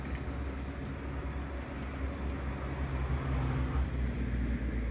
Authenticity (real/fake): real